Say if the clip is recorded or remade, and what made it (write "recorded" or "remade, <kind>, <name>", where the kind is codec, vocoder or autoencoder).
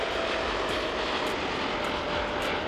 recorded